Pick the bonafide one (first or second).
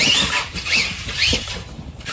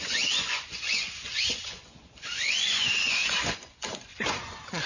first